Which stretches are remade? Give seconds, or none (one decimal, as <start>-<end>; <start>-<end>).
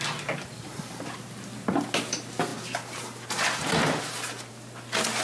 none